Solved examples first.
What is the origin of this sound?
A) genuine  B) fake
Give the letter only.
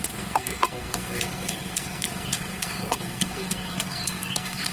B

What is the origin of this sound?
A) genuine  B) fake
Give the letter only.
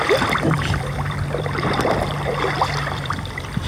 B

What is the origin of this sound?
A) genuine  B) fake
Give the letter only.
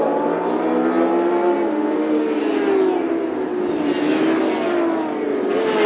A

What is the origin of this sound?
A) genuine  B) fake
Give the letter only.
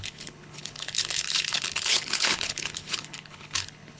B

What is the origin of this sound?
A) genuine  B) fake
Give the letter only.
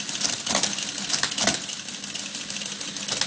A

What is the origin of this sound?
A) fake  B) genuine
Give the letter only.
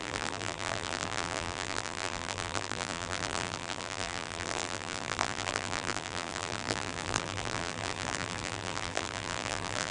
A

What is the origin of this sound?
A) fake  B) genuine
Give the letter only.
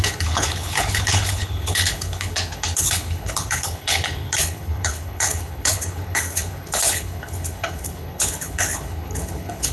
A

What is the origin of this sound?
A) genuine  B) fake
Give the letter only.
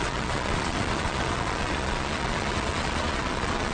B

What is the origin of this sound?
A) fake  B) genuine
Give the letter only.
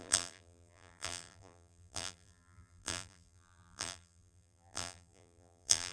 A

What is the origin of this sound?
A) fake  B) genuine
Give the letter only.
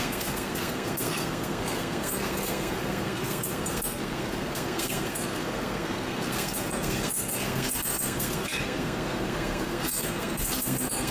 A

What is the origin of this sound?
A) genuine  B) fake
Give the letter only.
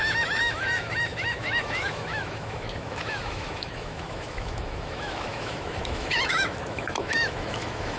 B